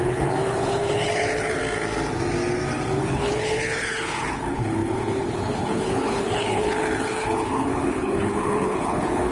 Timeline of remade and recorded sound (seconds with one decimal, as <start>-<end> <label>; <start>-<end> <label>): 0.0-1.6 remade; 1.6-3.0 recorded; 3.0-9.3 remade